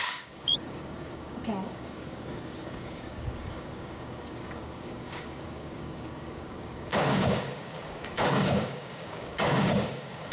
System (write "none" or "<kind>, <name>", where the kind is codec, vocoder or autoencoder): codec, DAC